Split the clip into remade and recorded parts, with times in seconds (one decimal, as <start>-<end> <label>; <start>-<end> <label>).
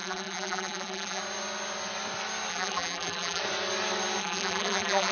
0.0-1.2 remade; 1.2-2.5 recorded; 2.5-3.4 remade; 3.4-4.2 recorded; 4.2-5.1 remade